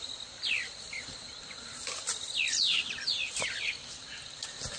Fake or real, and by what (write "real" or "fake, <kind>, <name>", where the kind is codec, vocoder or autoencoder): real